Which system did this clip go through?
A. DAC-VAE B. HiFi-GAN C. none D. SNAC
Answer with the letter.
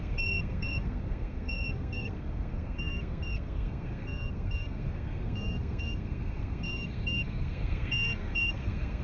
D